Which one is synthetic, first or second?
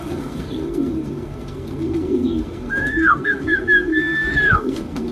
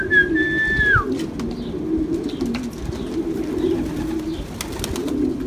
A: first